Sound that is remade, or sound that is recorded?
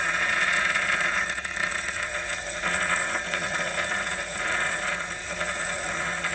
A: remade